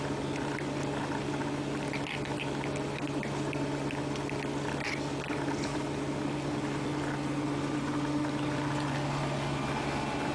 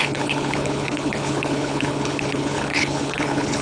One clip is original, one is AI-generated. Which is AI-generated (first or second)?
second